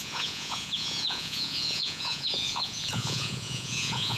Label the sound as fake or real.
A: fake